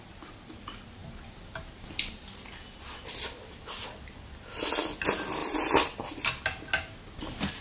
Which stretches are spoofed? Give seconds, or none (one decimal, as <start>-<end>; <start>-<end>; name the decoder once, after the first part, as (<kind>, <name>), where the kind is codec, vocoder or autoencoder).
none